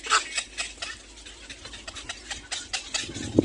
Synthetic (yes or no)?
no